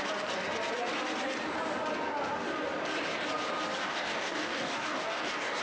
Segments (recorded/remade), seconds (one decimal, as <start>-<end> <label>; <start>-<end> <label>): 0.0-3.8 recorded; 3.8-5.6 remade